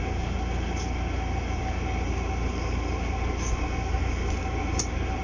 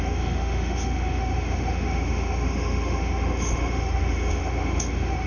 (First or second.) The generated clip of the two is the second